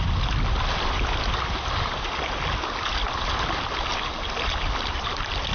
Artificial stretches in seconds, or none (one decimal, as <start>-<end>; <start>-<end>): none